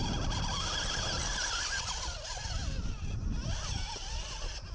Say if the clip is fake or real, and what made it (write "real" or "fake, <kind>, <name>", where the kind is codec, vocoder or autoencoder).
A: real